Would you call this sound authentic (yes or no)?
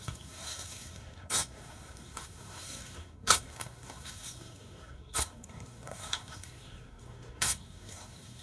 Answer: no